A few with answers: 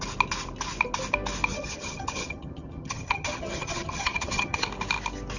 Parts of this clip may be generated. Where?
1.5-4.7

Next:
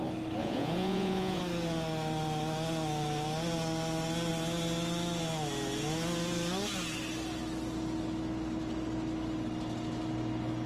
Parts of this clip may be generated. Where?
0.4-1.4